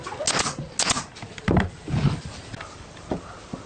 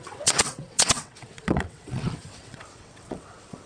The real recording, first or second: first